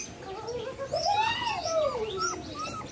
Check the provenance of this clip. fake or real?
real